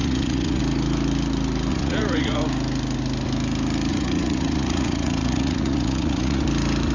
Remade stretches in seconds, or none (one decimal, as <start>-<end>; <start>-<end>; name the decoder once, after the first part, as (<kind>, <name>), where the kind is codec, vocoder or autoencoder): 0.0-0.6 (vocoder, Vocos); 1.7-2.4; 3.9-6.4